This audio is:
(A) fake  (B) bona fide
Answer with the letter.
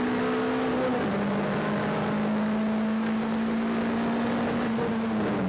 B